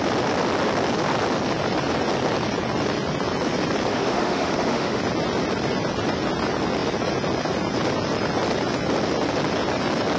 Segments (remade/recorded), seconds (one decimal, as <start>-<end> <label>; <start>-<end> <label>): 0.0-3.9 recorded; 3.9-5.0 remade; 5.0-10.2 recorded